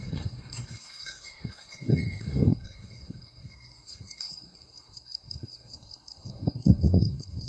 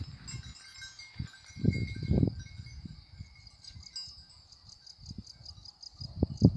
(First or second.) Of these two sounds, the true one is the second